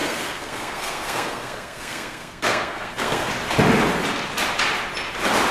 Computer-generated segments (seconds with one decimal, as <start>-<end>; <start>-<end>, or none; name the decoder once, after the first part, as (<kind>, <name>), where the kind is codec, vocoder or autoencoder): 0.0-3.3 (codec, SNAC)